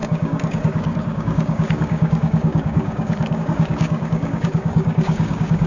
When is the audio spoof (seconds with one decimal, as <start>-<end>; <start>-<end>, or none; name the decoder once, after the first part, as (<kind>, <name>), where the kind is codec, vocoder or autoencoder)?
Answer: 0.0-5.7 (codec, DAC)